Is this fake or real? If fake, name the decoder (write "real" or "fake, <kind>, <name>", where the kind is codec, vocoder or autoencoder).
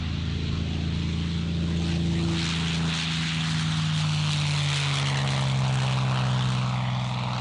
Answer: real